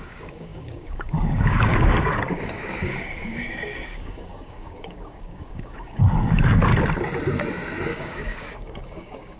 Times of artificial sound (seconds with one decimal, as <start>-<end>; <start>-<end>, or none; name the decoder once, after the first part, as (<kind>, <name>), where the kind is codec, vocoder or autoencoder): 0.0-6.7 (codec, DAC); 7.8-9.4